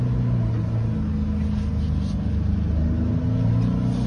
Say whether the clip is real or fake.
real